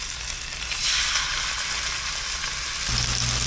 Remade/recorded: recorded